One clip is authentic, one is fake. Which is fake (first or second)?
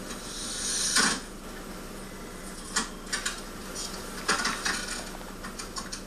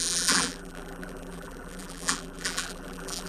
second